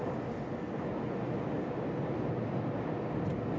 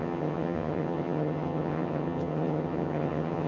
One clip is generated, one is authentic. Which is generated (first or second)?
second